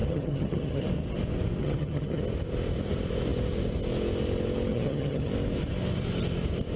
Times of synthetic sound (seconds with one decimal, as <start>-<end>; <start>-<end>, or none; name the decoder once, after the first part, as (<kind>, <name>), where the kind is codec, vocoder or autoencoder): 0.0-0.9 (vocoder, HiFi-GAN); 1.6-2.2; 4.7-5.3